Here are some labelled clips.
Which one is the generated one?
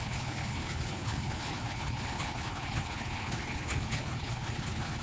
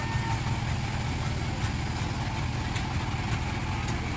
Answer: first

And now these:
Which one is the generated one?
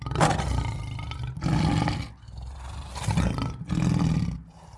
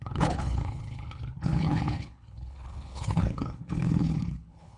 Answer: second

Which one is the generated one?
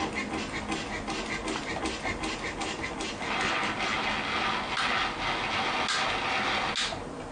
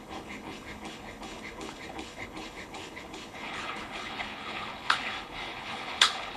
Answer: second